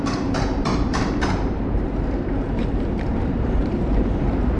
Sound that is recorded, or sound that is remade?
remade